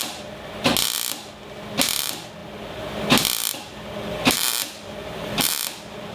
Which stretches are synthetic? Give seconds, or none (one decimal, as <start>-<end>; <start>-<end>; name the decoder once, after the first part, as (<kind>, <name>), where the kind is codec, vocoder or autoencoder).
3.4-5.5 (vocoder, BigVGAN v2)